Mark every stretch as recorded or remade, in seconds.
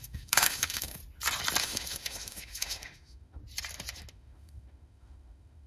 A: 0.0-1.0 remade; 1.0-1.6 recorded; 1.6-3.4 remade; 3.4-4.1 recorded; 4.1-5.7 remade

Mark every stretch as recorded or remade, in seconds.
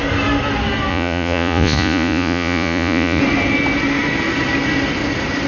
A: 0.0-0.9 recorded; 0.9-3.2 remade; 3.2-5.5 recorded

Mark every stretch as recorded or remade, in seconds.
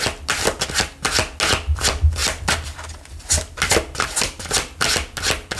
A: 0.0-5.6 recorded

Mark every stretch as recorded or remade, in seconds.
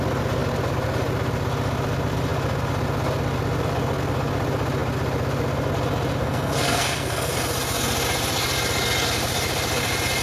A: 0.0-6.2 recorded; 6.2-7.3 remade; 7.3-10.2 recorded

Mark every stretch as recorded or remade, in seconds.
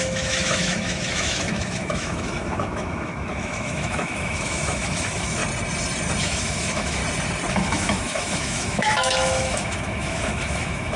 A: 0.0-5.4 remade; 5.4-6.2 recorded; 6.2-7.0 remade; 7.0-7.5 recorded; 7.5-11.0 remade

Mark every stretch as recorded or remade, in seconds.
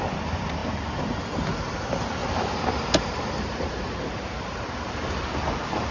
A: 0.0-0.6 recorded; 0.6-1.2 remade; 1.2-2.2 recorded; 2.2-5.4 remade; 5.4-5.9 recorded